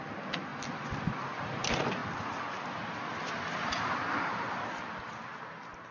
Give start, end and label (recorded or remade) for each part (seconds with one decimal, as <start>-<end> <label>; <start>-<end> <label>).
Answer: 0.0-5.9 recorded